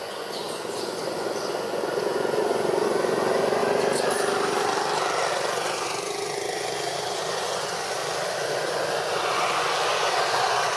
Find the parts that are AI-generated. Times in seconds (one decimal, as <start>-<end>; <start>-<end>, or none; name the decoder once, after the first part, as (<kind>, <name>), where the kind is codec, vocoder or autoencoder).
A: 0.0-3.6 (vocoder, Vocos); 5.3-8.0; 8.7-10.8